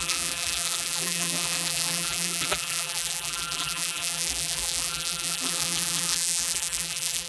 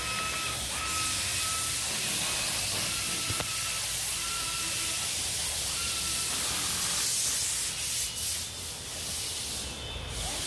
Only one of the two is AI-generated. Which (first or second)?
first